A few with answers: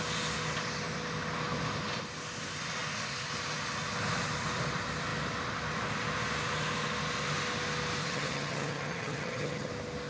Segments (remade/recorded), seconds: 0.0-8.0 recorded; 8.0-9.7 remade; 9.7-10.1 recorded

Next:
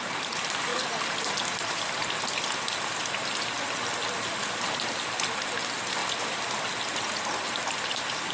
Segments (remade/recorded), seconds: 0.0-8.3 recorded

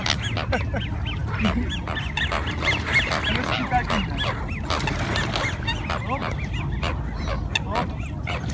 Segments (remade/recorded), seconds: 0.0-8.5 recorded

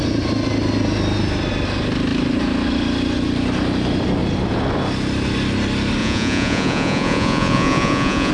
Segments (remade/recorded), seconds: 0.0-6.0 recorded; 6.0-8.3 remade

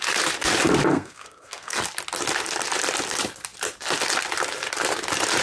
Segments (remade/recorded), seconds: 0.0-0.9 recorded; 0.9-1.8 remade; 1.8-5.4 recorded

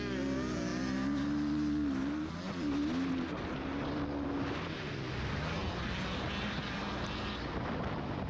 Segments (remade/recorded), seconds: 0.0-8.3 recorded

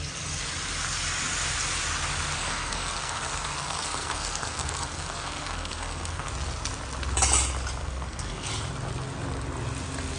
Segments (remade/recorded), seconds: 0.0-2.4 recorded; 2.4-6.3 remade; 6.3-7.8 recorded; 7.8-8.5 remade; 8.5-10.2 recorded